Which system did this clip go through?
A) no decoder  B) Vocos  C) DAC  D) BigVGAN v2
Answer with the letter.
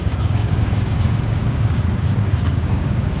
C